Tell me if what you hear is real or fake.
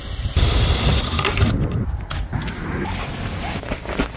real